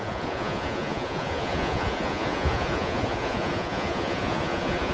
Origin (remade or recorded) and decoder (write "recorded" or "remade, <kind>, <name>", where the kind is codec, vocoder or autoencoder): remade, vocoder, Vocos